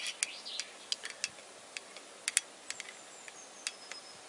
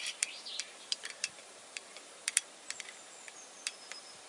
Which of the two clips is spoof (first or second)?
second